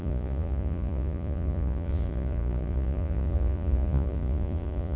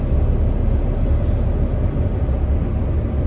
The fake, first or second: first